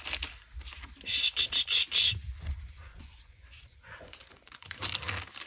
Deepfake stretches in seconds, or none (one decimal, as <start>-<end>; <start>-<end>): 2.2-4.8